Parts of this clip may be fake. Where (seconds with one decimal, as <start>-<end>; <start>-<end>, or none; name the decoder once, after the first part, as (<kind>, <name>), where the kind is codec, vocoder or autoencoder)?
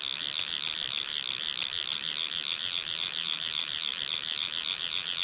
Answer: none